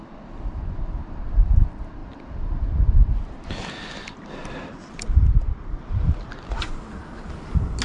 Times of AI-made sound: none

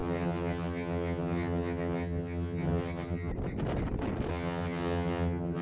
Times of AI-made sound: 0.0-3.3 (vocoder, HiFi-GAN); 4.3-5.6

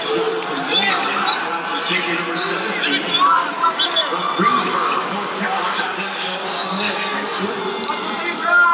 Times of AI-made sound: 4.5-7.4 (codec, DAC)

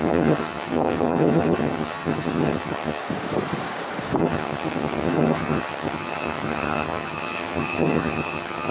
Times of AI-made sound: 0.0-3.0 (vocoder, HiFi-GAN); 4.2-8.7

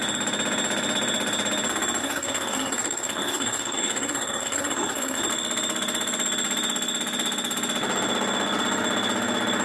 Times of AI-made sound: 2.0-5.2 (codec, SNAC)

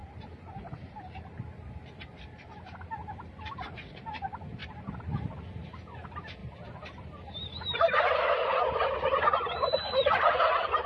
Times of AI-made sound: 0.0-1.4 (vocoder, BigVGAN v2); 4.6-5.5; 6.4-8.0

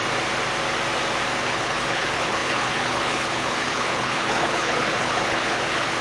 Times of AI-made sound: 1.4-6.0 (codec, HILCodec)

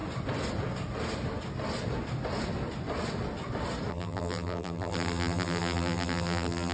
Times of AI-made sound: 3.9-6.7 (vocoder, BigVGAN v2)